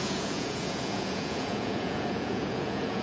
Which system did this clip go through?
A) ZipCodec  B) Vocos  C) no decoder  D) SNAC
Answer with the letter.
B